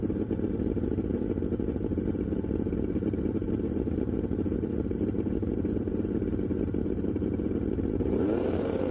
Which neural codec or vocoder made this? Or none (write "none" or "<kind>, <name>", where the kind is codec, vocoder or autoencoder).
vocoder, BigVGAN v2